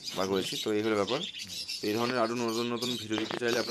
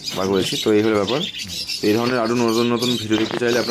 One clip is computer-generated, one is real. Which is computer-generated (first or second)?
first